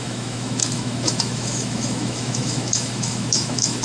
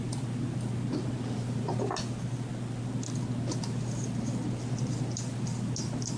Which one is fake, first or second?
first